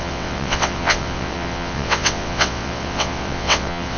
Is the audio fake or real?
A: fake